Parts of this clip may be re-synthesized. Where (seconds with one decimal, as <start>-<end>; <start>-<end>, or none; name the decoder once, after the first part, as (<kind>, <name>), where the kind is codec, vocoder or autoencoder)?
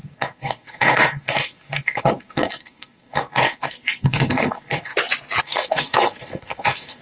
0.0-4.9 (codec, SNAC); 5.4-7.0